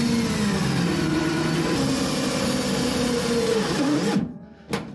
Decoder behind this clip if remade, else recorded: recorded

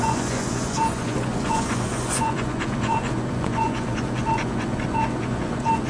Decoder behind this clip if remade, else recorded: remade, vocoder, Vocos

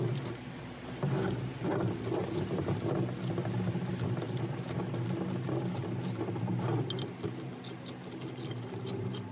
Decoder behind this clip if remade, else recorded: recorded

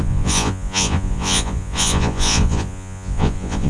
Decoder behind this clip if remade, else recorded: remade, vocoder, Vocos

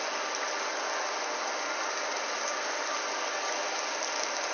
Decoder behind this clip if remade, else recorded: recorded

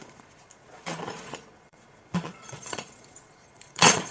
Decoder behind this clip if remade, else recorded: remade, vocoder, Vocos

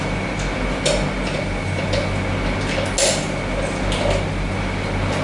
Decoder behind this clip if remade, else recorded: recorded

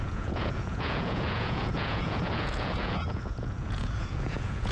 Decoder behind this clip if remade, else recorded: remade, vocoder, Vocos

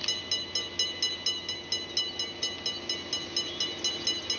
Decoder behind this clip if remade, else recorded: recorded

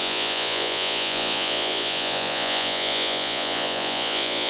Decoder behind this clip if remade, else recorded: remade, vocoder, Vocos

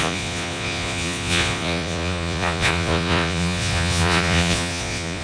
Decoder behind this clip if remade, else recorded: remade, vocoder, Vocos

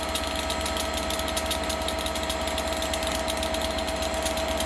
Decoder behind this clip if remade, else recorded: recorded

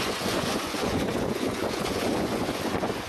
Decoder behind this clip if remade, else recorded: remade, vocoder, Vocos